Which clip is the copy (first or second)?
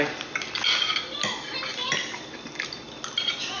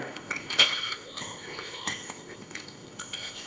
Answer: second